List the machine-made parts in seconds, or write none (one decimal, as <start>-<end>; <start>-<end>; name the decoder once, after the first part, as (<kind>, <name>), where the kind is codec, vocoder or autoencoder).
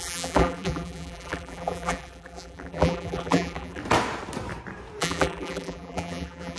0.0-3.8 (vocoder, BigVGAN v2); 5.0-6.6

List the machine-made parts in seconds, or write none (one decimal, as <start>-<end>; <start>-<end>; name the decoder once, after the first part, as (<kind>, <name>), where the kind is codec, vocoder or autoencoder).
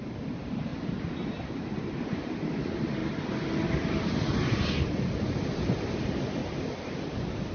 0.0-0.7 (vocoder, BigVGAN v2); 1.3-3.0; 4.1-6.4; 6.9-7.5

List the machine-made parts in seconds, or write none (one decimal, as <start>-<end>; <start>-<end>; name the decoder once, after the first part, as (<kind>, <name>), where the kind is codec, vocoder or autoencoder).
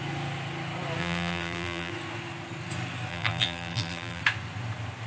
1.0-1.9 (vocoder, BigVGAN v2); 3.1-4.2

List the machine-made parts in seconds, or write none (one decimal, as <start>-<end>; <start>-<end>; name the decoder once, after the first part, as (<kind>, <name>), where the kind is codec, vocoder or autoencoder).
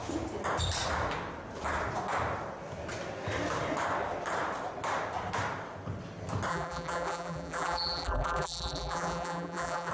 6.5-9.9 (vocoder, BigVGAN v2)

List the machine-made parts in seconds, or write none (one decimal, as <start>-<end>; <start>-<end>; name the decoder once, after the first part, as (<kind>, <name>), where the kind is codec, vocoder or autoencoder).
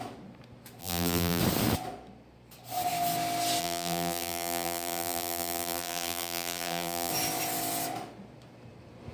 0.8-1.4 (vocoder, BigVGAN v2); 3.6-7.1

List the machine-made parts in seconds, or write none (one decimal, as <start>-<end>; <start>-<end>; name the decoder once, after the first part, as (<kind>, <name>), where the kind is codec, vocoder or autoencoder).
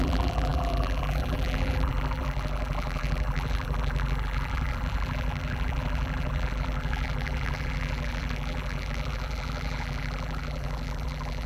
0.0-11.5 (vocoder, BigVGAN v2)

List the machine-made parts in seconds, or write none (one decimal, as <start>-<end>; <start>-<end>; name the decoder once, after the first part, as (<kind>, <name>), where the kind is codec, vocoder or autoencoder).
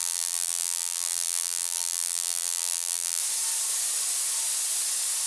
0.0-3.2 (vocoder, BigVGAN v2)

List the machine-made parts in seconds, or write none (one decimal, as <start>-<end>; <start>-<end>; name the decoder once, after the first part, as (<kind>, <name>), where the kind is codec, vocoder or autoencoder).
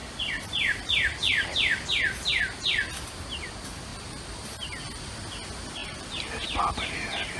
0.0-3.5 (vocoder, BigVGAN v2); 3.9-5.2; 5.8-6.7